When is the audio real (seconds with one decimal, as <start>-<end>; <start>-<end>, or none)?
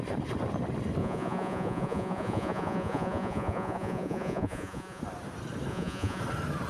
0.0-1.0; 5.0-5.7; 6.2-6.7